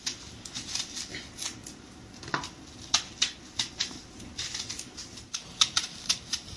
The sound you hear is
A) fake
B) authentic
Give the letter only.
B